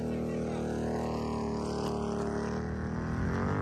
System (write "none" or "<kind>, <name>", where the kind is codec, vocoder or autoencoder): none